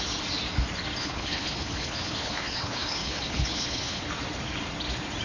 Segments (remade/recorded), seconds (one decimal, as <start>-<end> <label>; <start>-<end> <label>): 0.0-1.0 recorded; 1.0-4.0 remade; 4.0-5.2 recorded